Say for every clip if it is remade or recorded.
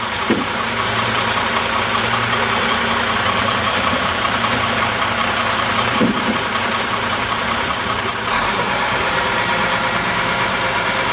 remade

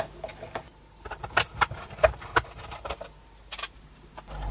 recorded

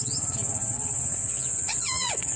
remade